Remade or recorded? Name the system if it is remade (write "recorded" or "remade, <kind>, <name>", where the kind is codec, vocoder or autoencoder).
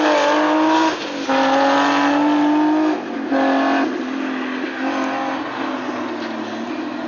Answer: recorded